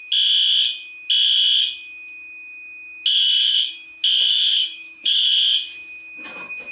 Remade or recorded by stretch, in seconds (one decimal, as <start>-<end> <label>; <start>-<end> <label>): 0.0-3.1 recorded; 3.1-3.9 remade; 3.9-4.3 recorded; 4.3-5.3 remade; 5.3-6.7 recorded